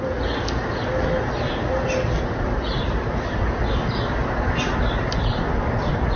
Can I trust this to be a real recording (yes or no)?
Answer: yes